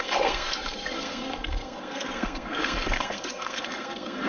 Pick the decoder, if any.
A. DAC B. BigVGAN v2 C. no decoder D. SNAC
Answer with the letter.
D